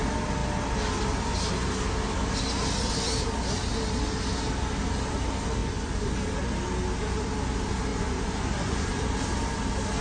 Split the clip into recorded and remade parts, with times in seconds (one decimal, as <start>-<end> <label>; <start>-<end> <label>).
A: 0.0-5.6 recorded; 5.6-6.1 remade; 6.1-7.9 recorded; 7.9-9.0 remade; 9.0-10.0 recorded